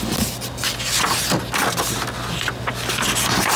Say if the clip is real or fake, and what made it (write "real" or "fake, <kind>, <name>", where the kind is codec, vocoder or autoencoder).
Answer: real